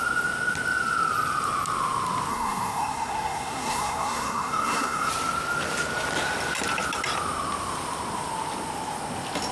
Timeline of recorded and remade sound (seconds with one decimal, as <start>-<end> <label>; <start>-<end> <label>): 0.0-2.3 recorded; 2.3-5.1 remade; 5.1-9.5 recorded

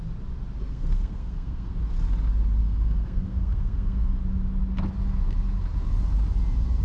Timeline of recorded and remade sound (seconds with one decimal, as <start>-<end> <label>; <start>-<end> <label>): 0.0-0.7 recorded; 0.7-1.8 remade; 1.8-2.6 recorded; 2.6-4.2 remade; 4.2-6.8 recorded

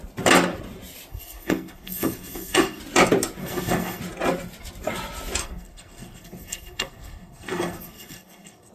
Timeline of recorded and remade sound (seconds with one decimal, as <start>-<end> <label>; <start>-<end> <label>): 0.0-1.1 recorded; 1.1-2.8 remade; 2.8-3.4 recorded; 3.4-4.0 remade; 4.0-5.4 recorded; 5.4-8.7 remade

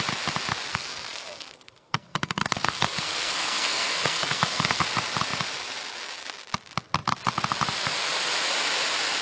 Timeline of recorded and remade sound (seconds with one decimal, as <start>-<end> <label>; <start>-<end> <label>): 0.0-0.7 recorded; 0.7-4.8 remade; 4.8-9.2 recorded

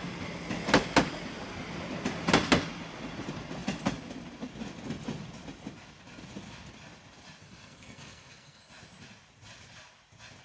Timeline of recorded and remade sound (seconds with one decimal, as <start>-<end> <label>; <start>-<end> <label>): 0.0-7.4 recorded; 7.4-8.7 remade; 8.7-10.4 recorded

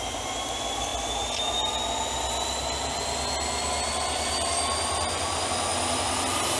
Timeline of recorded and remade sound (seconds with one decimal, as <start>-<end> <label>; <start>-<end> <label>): 0.0-6.6 recorded

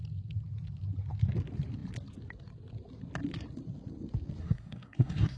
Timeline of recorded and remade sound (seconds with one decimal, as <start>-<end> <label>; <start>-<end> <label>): 0.0-4.4 recorded; 4.4-5.4 remade